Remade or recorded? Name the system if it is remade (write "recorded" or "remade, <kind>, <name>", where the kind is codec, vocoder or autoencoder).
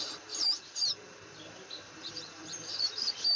remade, vocoder, BigVGAN v2